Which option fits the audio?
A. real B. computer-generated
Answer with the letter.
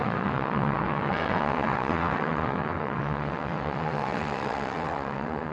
B